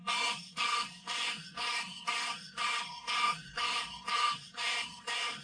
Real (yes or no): no